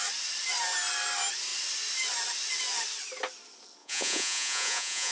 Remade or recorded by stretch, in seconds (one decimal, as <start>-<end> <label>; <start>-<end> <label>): 0.0-3.8 recorded; 3.8-5.1 remade